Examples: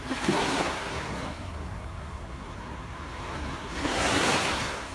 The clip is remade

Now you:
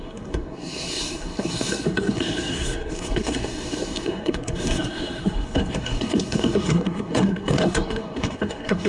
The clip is remade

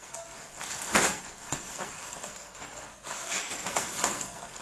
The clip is remade